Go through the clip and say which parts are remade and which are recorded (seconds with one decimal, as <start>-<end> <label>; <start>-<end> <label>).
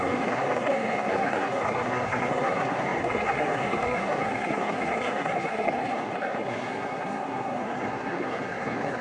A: 0.0-9.0 remade